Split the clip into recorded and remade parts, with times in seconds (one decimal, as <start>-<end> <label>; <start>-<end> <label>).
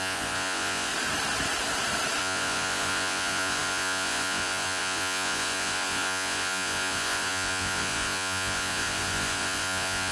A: 0.0-0.9 remade; 0.9-2.2 recorded; 2.2-10.1 remade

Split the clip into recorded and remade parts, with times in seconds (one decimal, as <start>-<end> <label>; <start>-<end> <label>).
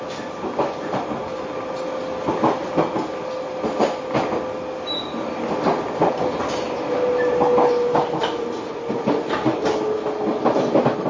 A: 0.0-11.1 recorded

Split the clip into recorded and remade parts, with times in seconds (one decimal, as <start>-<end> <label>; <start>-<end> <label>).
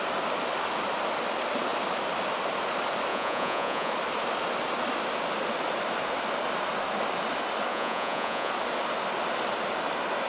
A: 0.0-3.1 recorded; 3.1-3.9 remade; 3.9-7.7 recorded; 7.7-8.5 remade; 8.5-10.3 recorded